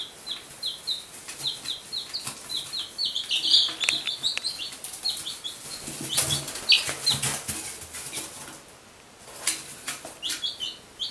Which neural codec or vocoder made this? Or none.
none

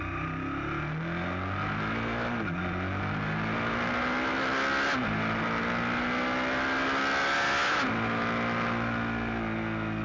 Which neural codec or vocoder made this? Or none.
none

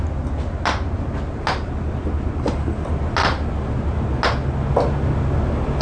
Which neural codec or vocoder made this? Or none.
none